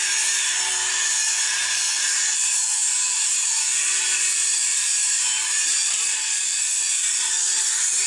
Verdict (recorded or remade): remade